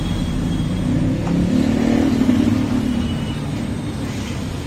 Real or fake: real